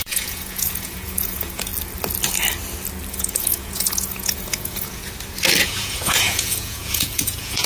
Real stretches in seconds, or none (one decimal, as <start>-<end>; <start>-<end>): 1.7-3.1; 5.0-5.6